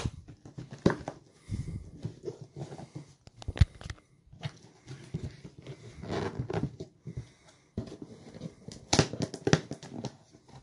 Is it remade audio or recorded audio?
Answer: recorded